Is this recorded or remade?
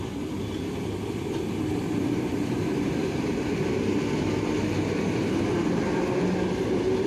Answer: recorded